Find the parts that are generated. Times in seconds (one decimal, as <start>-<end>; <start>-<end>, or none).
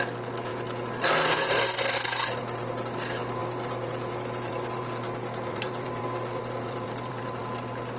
3.4-6.0; 6.4-7.4